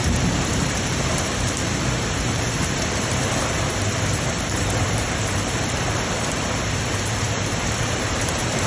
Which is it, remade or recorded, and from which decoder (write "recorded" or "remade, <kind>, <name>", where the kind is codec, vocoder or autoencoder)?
remade, vocoder, BigVGAN v2